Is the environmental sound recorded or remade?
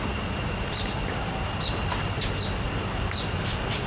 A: recorded